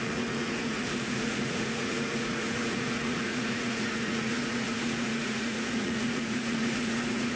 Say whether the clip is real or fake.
fake